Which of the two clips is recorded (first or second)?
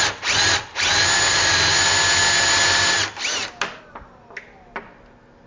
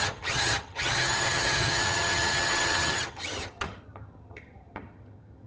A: first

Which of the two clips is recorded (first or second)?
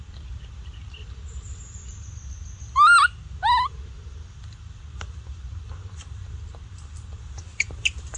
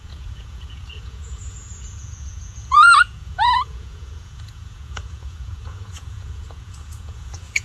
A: first